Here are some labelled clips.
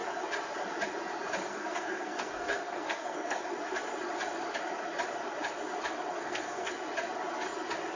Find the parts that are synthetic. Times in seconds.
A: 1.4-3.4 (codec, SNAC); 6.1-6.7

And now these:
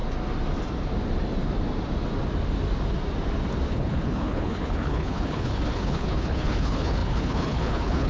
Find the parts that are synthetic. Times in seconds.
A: 3.7-8.1 (codec, HILCodec)